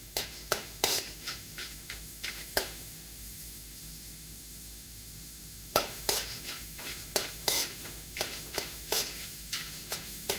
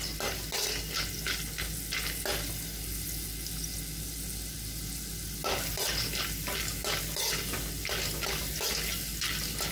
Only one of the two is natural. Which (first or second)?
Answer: second